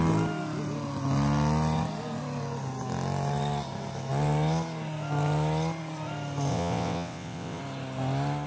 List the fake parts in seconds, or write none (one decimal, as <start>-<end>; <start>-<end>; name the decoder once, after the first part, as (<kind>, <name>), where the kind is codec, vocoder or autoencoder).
6.5-7.6 (vocoder, WaveNeXt)